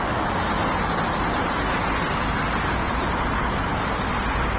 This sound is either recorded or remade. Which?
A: recorded